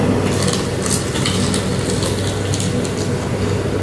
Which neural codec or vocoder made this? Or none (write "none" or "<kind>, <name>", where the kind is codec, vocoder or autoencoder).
none